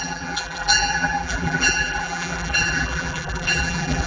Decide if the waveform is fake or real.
fake